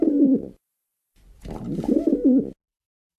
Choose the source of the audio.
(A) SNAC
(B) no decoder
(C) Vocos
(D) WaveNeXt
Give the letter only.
B